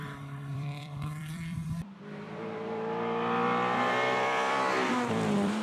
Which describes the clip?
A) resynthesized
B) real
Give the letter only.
A